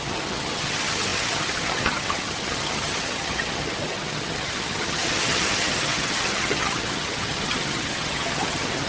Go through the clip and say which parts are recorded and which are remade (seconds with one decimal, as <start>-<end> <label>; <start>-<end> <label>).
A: 0.0-8.9 remade